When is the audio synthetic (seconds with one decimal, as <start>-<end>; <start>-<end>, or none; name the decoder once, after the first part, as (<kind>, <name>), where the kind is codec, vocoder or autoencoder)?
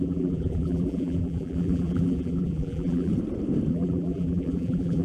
0.0-3.1 (vocoder, BigVGAN v2); 3.7-5.0